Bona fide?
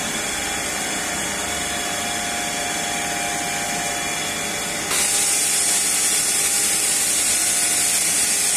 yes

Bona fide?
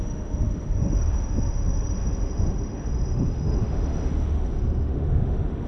no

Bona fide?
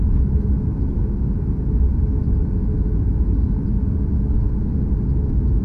yes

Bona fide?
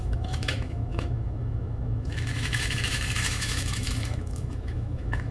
no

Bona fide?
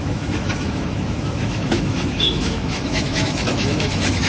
no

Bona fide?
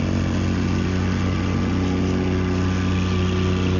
yes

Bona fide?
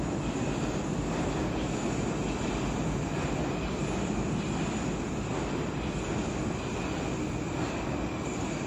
yes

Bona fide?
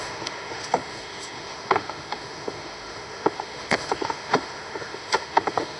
no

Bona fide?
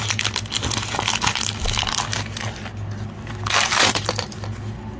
yes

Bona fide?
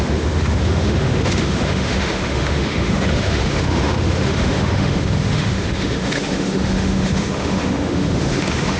no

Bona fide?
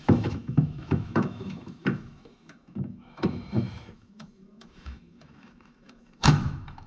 no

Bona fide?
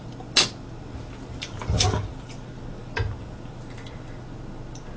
yes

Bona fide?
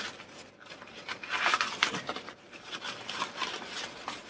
yes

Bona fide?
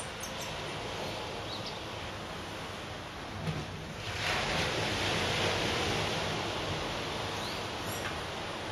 yes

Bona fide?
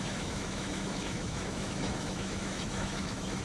no